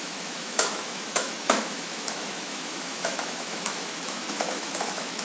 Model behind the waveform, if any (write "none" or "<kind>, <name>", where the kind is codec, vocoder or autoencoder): autoencoder, DAC-VAE